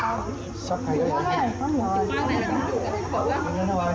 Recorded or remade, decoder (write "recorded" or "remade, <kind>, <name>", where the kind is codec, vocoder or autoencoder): recorded